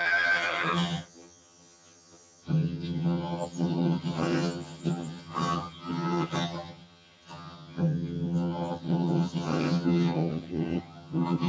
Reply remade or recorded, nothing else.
remade